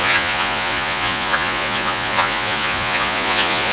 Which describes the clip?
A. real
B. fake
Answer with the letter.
B